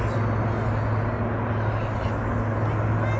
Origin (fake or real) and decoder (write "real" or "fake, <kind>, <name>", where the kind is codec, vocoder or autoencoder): real